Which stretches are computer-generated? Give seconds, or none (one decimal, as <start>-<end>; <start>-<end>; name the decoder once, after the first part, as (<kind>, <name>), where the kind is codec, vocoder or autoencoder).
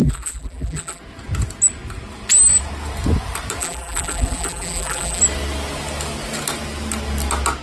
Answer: 0.0-1.0 (vocoder, BigVGAN v2); 3.6-5.2